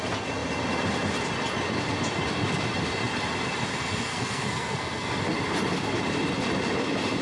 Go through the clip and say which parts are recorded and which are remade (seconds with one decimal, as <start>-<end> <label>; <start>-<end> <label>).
0.0-4.1 recorded; 4.1-5.2 remade; 5.2-7.2 recorded